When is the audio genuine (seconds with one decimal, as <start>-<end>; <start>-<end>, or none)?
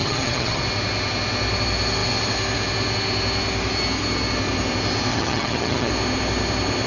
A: 0.6-5.1; 5.9-6.9